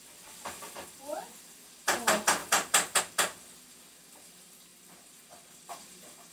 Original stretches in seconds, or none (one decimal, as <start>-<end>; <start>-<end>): 0.0-4.7